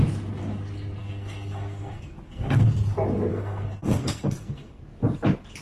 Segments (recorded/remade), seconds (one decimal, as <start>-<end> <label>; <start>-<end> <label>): 0.0-1.0 recorded; 1.0-2.7 remade; 2.7-3.3 recorded; 3.3-4.8 remade; 4.8-5.6 recorded